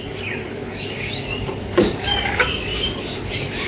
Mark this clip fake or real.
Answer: fake